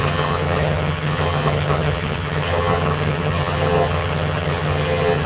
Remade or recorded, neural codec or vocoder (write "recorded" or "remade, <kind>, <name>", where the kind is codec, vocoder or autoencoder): remade, vocoder, HiFi-GAN